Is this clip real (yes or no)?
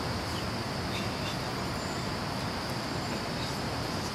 yes